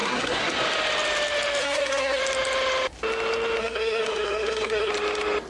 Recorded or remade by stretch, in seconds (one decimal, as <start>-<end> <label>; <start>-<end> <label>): 0.0-0.5 remade; 0.5-1.6 recorded; 1.6-2.2 remade; 2.2-3.6 recorded; 3.6-4.9 remade; 4.9-5.5 recorded